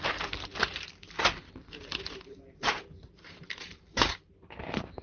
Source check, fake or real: fake